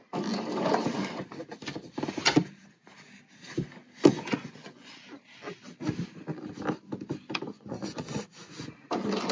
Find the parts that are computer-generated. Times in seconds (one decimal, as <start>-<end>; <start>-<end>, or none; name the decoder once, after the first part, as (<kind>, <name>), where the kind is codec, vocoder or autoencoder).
4.1-4.9 (vocoder, Vocos); 7.5-8.2